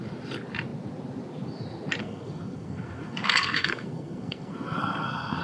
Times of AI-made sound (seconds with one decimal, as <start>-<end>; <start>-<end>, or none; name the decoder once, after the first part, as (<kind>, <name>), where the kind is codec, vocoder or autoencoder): 2.0-5.4 (codec, SNAC)